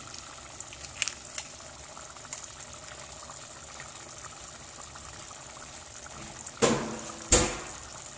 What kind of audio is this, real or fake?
real